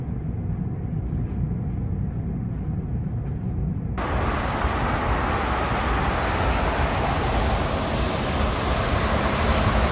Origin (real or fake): real